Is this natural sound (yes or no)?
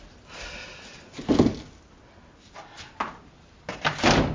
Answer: yes